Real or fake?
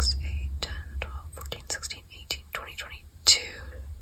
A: fake